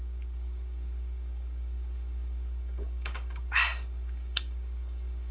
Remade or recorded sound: remade